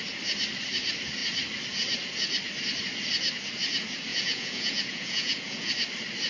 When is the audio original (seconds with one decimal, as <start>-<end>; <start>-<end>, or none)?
0.0-4.1; 5.7-6.3